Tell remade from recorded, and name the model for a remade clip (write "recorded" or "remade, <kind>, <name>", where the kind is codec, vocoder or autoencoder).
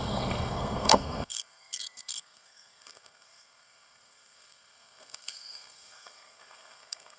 remade, codec, SNAC